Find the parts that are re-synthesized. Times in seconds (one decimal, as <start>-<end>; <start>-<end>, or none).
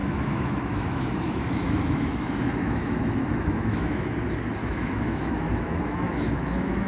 0.0-4.1; 4.6-6.9